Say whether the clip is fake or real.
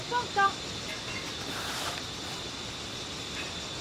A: real